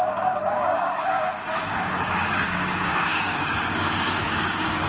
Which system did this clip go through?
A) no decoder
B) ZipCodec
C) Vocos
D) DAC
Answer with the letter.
D